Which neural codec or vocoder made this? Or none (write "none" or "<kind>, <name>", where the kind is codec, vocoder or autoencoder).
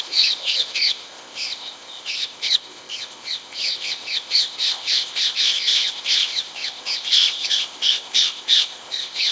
codec, ZipCodec